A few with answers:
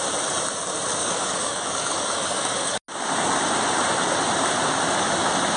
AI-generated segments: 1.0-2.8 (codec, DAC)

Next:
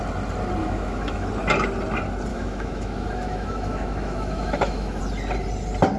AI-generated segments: 0.6-1.3 (autoencoder, DAC-VAE); 2.3-5.0

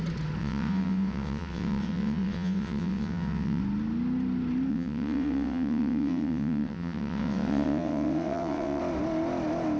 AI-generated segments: 0.4-3.6 (vocoder, WaveNeXt); 4.7-8.8